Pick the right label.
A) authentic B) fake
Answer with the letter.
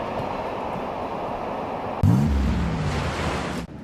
A